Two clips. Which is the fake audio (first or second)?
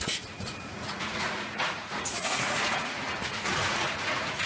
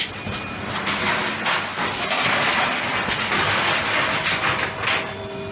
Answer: first